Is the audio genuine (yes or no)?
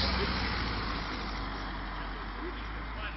yes